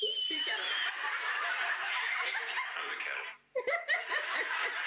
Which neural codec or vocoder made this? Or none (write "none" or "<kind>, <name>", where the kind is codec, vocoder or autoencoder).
none